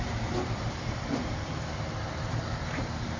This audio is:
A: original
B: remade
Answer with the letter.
B